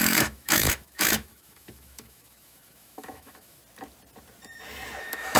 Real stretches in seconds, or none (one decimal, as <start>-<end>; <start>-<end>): 3.6-5.0